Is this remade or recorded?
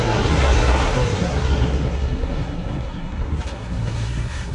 remade